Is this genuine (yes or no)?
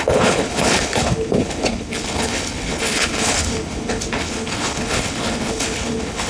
no